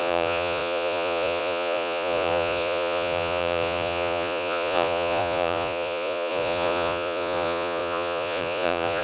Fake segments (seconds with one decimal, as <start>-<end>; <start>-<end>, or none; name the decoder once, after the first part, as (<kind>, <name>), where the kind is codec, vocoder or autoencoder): 0.0-9.0 (vocoder, Vocos)